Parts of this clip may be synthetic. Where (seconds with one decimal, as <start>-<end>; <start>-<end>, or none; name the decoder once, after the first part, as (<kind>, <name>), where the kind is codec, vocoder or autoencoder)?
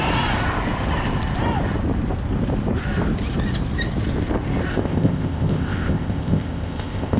4.7-7.2 (codec, ZipCodec)